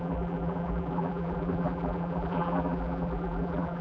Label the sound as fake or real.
fake